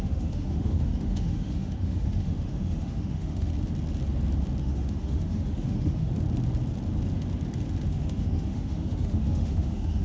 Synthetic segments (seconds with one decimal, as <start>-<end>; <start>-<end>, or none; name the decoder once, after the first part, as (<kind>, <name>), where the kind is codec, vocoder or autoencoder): 0.0-3.5 (autoencoder, DAC-VAE); 4.6-6.1; 7.9-10.0